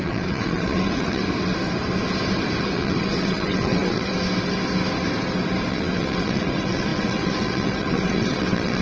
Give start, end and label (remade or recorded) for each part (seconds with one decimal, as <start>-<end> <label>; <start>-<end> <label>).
0.0-1.2 remade; 1.2-2.6 recorded; 2.6-4.1 remade; 4.1-5.7 recorded; 5.7-8.8 remade